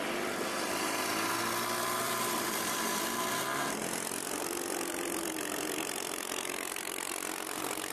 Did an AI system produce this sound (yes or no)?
yes